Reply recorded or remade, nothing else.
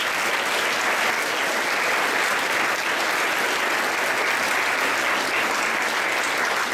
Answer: recorded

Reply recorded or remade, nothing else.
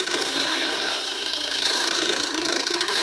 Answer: remade